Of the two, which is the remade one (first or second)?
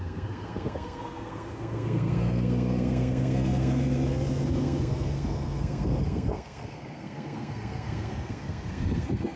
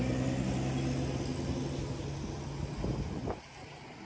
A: first